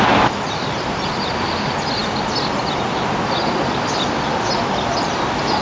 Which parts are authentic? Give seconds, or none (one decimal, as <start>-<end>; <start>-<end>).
0.0-5.6